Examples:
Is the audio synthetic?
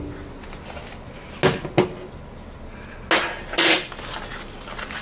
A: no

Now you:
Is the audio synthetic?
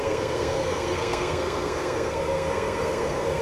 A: yes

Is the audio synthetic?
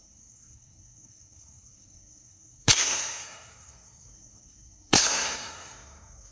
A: yes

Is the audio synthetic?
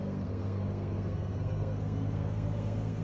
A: yes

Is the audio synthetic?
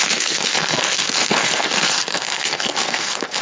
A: yes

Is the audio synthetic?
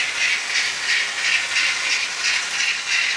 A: no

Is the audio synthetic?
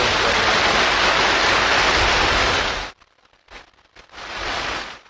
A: no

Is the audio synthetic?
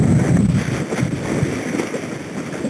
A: no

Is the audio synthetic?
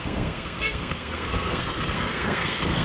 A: yes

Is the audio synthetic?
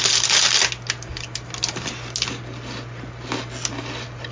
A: no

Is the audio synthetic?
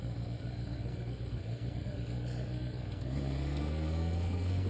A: yes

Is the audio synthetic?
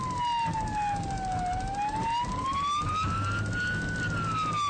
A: no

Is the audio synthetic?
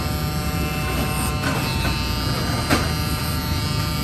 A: no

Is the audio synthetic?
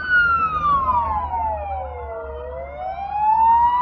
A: no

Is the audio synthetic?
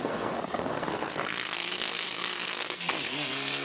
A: yes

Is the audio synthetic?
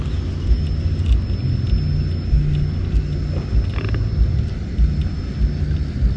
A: no